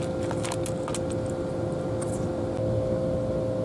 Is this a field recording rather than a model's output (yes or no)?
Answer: yes